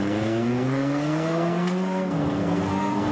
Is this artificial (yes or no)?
yes